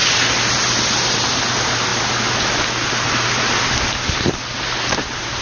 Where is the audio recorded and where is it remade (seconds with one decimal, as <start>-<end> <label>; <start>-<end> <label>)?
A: 0.0-5.4 recorded